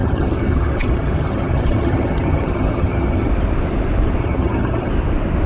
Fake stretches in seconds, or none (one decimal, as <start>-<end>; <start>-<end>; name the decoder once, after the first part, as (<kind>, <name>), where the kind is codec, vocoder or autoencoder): 0.0-3.3 (vocoder, HiFi-GAN); 4.2-4.9